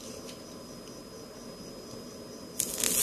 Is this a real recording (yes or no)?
yes